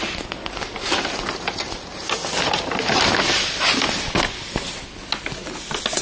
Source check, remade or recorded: recorded